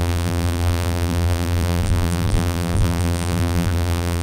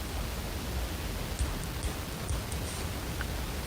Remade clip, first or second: first